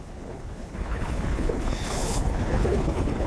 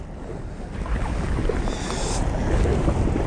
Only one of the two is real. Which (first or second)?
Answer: second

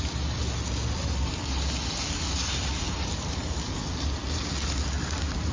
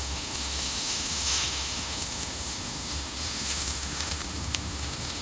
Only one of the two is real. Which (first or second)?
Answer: first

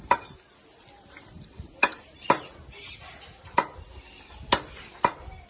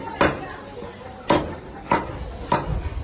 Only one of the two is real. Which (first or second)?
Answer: second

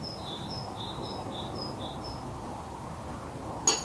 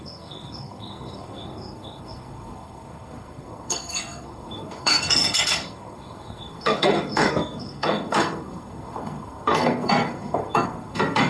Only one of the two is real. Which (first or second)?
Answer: first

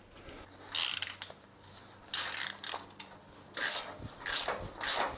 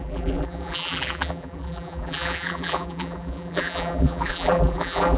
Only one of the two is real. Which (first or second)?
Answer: first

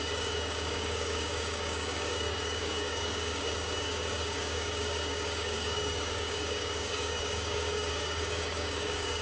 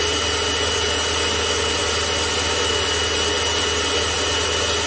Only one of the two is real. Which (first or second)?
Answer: second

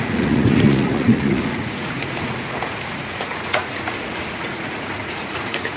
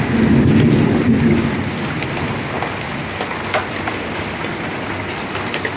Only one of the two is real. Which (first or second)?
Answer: second